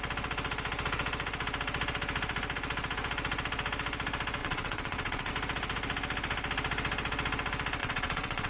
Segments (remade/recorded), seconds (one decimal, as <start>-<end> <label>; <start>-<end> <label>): 0.0-4.4 recorded; 4.4-5.3 remade; 5.3-7.8 recorded; 7.8-8.5 remade